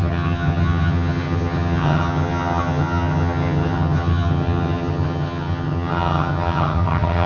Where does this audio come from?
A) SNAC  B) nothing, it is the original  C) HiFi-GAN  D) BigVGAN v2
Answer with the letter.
C